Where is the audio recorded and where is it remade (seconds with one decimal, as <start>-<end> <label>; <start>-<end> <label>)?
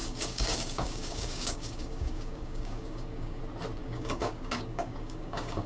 0.0-3.4 remade; 3.4-3.8 recorded; 3.8-5.7 remade